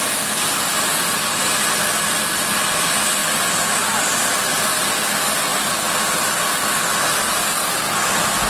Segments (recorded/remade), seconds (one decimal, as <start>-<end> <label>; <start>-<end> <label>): 0.0-8.5 recorded